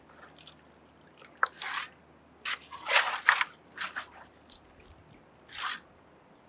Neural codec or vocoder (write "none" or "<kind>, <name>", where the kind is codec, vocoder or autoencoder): none